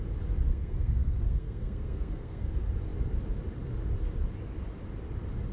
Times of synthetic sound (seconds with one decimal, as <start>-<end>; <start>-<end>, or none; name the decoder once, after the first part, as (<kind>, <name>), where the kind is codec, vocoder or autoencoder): 0.5-2.5 (codec, SNAC)